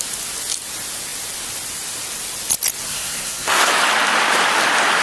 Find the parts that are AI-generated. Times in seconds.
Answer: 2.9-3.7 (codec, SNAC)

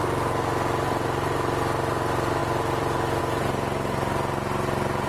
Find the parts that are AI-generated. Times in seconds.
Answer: none